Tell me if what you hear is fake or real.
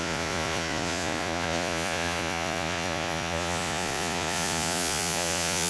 fake